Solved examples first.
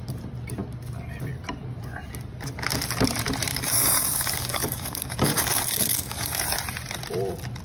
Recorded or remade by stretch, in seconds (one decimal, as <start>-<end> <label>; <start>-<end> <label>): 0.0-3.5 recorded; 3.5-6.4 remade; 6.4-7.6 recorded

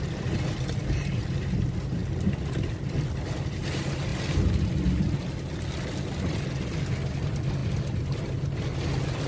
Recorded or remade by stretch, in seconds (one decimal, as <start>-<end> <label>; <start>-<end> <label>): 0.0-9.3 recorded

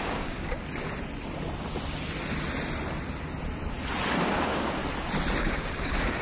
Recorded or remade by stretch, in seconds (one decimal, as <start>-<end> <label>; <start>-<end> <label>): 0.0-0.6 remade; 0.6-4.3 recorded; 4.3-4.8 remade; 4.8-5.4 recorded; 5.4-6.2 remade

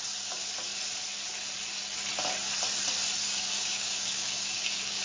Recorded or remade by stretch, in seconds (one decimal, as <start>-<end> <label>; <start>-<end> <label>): 0.0-3.2 recorded; 3.2-5.0 remade